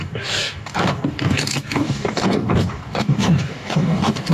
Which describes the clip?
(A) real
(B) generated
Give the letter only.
B